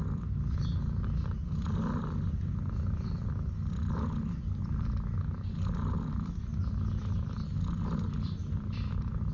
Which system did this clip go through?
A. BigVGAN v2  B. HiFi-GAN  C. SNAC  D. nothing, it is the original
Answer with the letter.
D